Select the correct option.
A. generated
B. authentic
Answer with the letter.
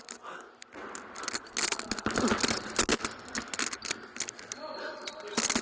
B